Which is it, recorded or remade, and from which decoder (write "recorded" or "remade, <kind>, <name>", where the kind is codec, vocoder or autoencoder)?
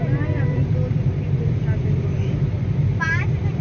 remade, vocoder, BigVGAN v2